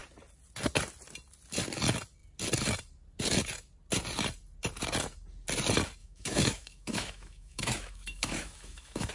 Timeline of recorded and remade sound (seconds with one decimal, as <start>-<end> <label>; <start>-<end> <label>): 0.0-6.0 recorded; 6.0-9.1 remade